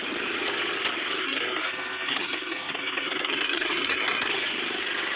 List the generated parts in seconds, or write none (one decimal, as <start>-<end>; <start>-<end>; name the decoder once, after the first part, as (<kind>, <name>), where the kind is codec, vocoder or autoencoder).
1.2-4.3 (codec, SNAC)